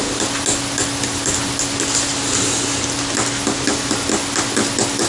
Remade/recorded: recorded